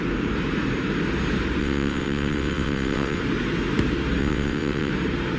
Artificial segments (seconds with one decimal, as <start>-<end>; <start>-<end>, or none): 1.6-3.2; 4.2-4.9